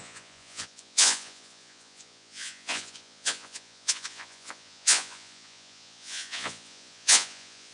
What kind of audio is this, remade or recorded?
remade